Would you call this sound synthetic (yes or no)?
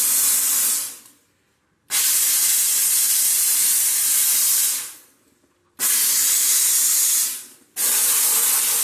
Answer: no